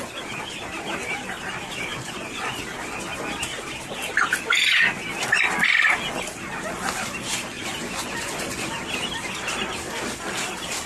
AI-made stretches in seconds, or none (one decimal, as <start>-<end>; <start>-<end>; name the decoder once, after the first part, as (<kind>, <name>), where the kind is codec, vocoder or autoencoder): 1.9-2.6 (vocoder, Vocos); 7.5-8.8

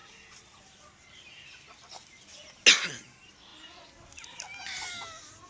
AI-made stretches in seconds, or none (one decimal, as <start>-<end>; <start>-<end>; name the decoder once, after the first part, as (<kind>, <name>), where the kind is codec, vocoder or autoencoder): none

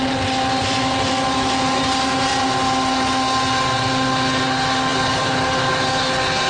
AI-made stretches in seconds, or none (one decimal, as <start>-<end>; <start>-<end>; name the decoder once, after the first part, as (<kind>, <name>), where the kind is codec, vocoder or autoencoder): none

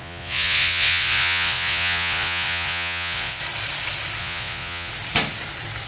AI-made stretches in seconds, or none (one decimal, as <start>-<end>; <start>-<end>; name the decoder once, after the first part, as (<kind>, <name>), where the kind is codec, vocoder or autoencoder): 0.0-3.4 (vocoder, Vocos); 4.2-4.9

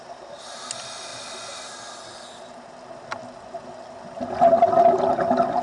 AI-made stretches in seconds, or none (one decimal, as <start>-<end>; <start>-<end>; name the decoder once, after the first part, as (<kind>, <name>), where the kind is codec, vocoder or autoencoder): none